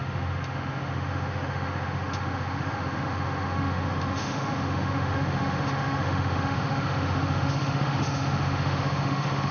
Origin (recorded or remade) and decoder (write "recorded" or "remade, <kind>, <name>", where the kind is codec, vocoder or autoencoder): remade, autoencoder, DAC-VAE